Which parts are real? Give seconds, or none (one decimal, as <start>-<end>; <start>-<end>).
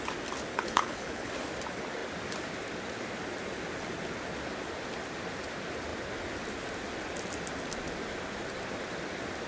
0.0-0.5; 1.3-9.5